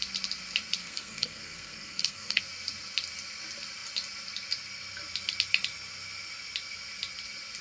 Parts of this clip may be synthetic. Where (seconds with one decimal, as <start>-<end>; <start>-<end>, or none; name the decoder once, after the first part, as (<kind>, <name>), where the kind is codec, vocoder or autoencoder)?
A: 0.8-2.4 (codec, SNAC)